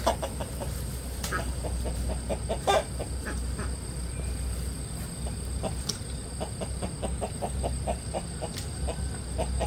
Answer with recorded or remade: recorded